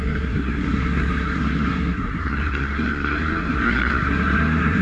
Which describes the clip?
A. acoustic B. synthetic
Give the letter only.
B